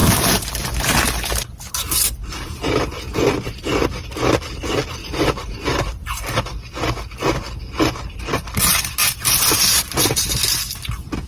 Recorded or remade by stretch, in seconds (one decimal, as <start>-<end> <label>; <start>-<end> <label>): 0.0-5.0 recorded; 5.0-6.2 remade; 6.2-11.3 recorded